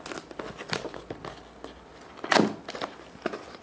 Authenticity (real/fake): real